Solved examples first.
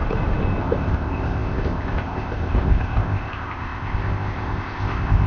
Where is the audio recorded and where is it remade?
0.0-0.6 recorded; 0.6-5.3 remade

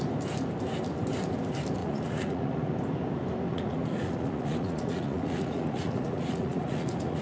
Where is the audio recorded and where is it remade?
0.0-1.8 recorded; 1.8-2.7 remade; 2.7-3.5 recorded; 3.5-7.2 remade

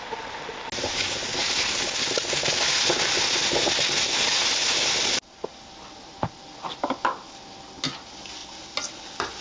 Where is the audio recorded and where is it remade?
0.0-8.4 recorded; 8.4-8.9 remade; 8.9-9.4 recorded

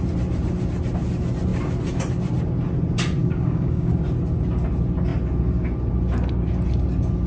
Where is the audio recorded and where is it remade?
0.0-3.2 recorded; 3.2-3.9 remade; 3.9-7.3 recorded

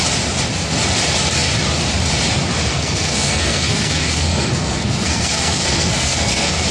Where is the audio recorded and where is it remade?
0.0-2.7 recorded; 2.7-6.7 remade